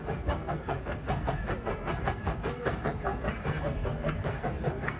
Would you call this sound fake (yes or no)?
yes